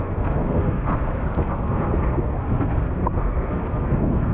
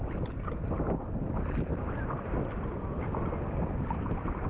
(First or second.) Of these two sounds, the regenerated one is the first